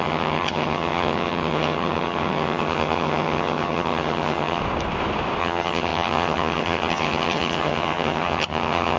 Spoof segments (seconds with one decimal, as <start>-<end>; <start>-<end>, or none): 0.0-4.6; 5.4-9.0